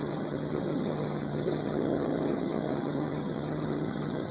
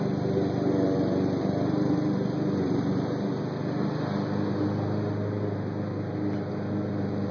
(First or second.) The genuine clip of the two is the second